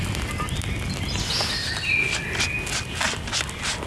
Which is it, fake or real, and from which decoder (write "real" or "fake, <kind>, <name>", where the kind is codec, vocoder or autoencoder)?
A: real